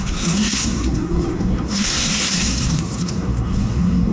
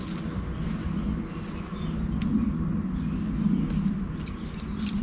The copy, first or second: first